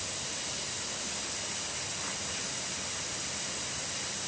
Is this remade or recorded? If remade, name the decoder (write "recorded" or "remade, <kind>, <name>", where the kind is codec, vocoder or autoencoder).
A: recorded